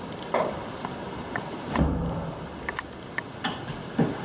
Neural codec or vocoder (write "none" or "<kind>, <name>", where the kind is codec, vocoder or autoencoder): none